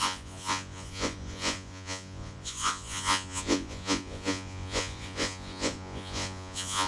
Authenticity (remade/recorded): remade